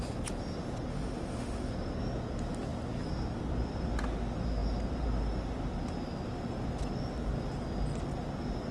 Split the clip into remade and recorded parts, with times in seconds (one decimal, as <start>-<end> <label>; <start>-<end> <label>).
0.0-0.9 recorded; 0.9-1.7 remade; 1.7-8.7 recorded